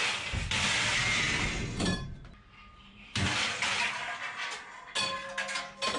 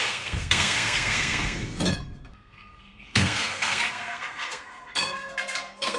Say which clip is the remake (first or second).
second